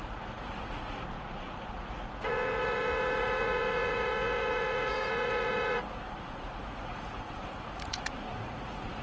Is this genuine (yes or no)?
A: no